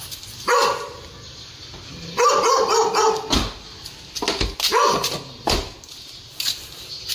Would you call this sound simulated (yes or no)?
no